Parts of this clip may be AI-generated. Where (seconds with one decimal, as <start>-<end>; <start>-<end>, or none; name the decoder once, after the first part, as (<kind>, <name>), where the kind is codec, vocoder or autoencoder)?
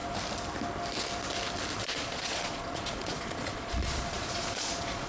1.8-5.1 (vocoder, Vocos)